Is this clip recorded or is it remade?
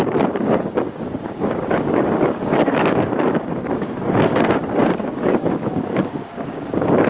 remade